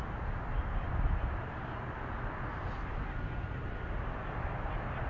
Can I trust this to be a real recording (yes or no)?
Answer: yes